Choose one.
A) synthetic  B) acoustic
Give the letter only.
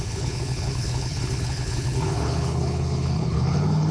A